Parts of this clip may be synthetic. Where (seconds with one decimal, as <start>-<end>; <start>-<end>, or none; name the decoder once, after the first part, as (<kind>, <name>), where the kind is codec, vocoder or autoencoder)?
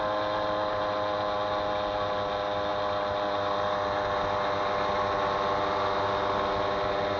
none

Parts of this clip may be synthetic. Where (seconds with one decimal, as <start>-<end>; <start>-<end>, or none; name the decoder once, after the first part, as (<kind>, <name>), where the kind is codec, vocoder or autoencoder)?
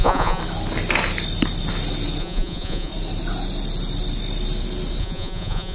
0.0-0.4 (vocoder, Vocos); 2.2-2.9; 5.0-5.7